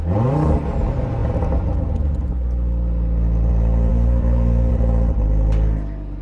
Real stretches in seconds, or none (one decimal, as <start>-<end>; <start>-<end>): 0.0-3.9; 4.7-6.2